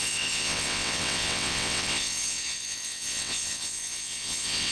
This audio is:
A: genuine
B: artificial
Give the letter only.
B